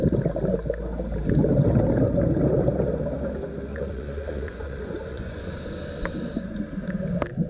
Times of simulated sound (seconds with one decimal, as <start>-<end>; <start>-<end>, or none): 3.7-5.5